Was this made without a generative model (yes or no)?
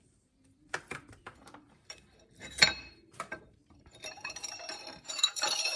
no